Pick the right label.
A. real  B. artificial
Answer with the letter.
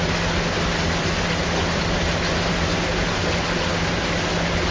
A